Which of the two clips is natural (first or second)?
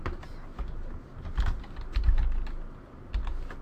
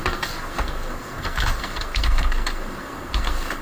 first